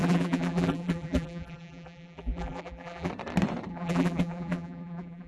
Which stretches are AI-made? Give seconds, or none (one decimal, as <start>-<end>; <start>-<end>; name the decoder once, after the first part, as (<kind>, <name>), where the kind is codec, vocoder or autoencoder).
0.0-3.1 (vocoder, BigVGAN v2); 3.7-5.3

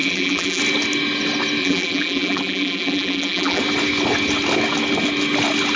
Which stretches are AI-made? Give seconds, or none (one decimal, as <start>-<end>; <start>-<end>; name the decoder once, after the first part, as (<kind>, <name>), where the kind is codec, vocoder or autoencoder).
0.0-0.6 (vocoder, BigVGAN v2); 1.6-3.6

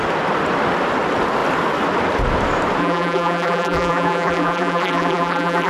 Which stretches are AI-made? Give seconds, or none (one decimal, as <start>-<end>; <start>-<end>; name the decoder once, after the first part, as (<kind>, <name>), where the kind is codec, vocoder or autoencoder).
2.8-5.7 (vocoder, BigVGAN v2)

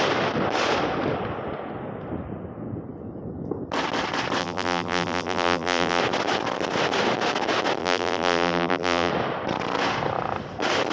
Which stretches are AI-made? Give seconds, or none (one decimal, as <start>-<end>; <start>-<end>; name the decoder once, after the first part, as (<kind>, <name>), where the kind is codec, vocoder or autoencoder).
4.4-6.0 (vocoder, BigVGAN v2); 7.8-9.1

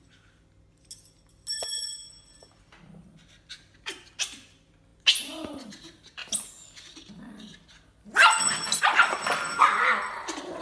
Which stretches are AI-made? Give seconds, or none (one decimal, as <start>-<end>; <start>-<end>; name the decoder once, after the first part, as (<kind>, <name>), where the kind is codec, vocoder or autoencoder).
1.5-4.1 (vocoder, BigVGAN v2)

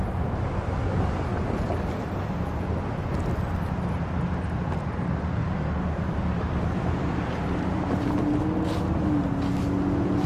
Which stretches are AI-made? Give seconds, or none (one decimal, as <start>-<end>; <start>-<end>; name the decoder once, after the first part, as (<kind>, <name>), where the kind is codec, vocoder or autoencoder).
5.4-8.4 (vocoder, BigVGAN v2)

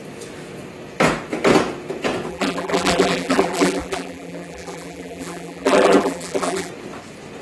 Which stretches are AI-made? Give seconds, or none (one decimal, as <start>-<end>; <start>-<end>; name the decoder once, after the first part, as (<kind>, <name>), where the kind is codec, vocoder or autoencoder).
2.3-6.7 (vocoder, BigVGAN v2)

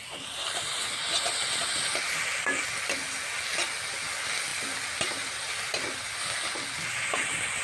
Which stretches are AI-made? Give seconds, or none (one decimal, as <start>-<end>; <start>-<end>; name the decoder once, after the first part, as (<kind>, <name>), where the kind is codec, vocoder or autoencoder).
none